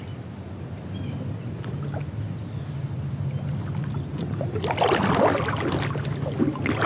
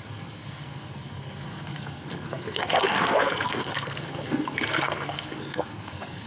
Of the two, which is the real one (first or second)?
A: first